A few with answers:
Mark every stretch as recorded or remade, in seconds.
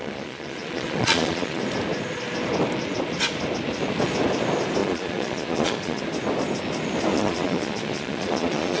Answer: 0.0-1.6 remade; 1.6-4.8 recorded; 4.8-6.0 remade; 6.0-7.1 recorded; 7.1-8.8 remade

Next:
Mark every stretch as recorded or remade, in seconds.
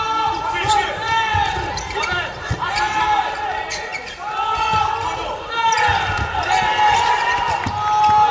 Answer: 0.0-8.3 recorded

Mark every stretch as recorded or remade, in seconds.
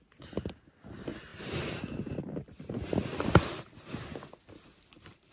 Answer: 0.0-5.3 recorded